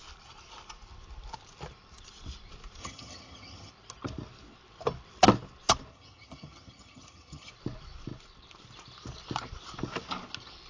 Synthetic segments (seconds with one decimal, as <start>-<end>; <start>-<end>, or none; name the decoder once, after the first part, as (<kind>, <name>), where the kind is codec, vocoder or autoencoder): 2.8-3.7 (vocoder, HiFi-GAN); 5.9-7.5

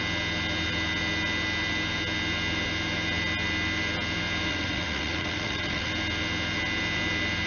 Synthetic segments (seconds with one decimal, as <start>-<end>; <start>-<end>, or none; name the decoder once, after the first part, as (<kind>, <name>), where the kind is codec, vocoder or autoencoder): 4.5-5.9 (vocoder, WaveNeXt)

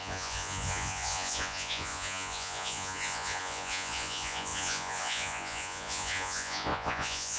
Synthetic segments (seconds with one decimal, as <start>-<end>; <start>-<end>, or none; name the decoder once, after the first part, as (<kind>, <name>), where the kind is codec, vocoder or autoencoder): 0.0-7.4 (vocoder, Vocos)